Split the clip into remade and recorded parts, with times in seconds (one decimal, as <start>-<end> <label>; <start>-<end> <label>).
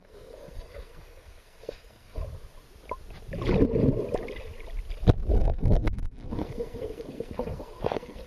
0.0-2.2 remade; 2.2-5.4 recorded; 5.4-8.3 remade